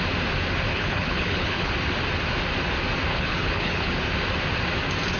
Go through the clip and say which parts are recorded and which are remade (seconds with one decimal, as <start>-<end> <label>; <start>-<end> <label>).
0.0-0.7 recorded; 0.7-1.7 remade; 1.7-3.1 recorded; 3.1-3.9 remade; 3.9-5.2 recorded

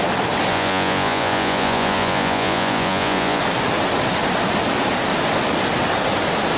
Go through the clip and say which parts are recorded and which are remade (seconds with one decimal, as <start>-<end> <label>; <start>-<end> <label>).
0.0-0.5 recorded; 0.5-3.4 remade; 3.4-6.6 recorded

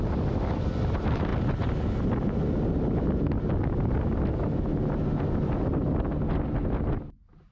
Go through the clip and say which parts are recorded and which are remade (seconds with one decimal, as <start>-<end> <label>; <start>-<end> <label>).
0.0-7.5 recorded